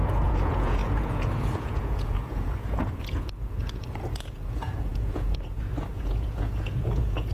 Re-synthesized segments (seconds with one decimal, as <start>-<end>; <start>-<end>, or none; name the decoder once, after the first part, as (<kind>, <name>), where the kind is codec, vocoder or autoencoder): 0.0-7.3 (vocoder, Vocos)